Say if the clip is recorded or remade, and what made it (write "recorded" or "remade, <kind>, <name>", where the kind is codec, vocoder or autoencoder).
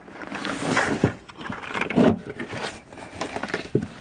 recorded